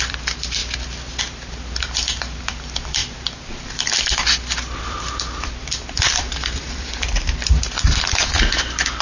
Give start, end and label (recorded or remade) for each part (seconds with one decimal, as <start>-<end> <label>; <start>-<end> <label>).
0.0-0.6 remade; 0.6-1.2 recorded; 1.2-7.0 remade; 7.0-9.0 recorded